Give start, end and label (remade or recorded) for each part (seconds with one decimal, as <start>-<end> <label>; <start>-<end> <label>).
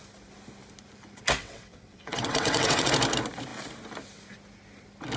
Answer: 0.0-1.4 recorded; 1.4-2.9 remade; 2.9-5.2 recorded